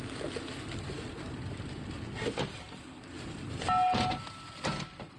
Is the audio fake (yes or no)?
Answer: no